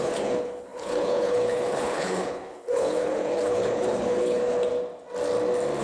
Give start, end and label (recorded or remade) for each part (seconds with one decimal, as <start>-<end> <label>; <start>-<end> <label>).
0.0-4.7 remade; 4.7-5.8 recorded